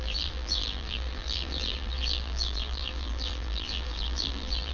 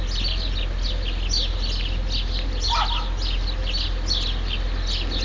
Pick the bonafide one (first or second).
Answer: second